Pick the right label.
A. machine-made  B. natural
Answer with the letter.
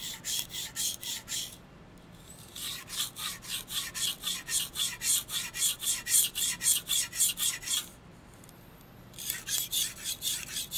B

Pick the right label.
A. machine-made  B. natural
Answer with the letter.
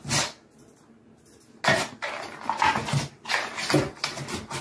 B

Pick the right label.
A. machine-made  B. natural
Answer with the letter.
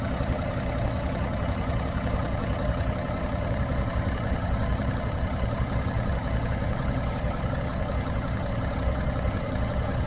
A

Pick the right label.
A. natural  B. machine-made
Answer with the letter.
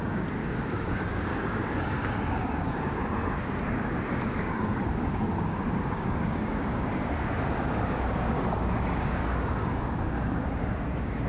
B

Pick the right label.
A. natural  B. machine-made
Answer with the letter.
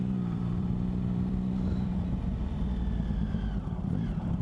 B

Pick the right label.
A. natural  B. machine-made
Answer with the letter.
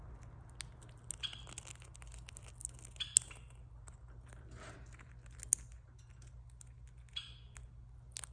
A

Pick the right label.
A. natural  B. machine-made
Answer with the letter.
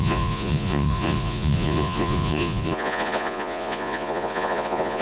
B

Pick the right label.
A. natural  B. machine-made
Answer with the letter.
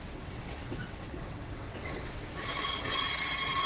B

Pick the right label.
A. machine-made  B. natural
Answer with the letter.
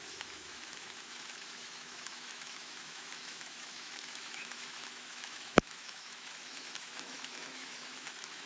A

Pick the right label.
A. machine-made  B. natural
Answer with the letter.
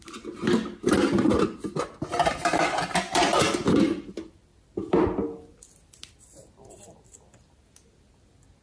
B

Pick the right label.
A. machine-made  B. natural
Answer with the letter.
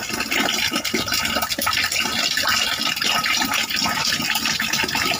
B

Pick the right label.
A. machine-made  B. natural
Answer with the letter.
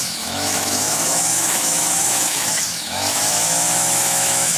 A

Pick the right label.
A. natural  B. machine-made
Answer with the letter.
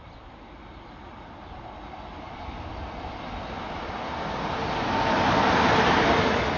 A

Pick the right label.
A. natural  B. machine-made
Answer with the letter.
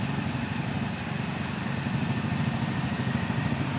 A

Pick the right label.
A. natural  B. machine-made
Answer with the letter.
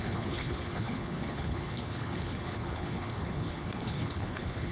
B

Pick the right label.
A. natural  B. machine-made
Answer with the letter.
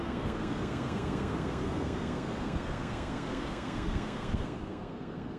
B